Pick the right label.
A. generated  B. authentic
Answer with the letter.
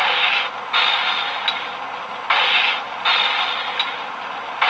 B